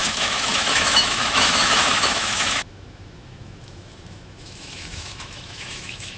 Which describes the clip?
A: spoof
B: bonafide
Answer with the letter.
A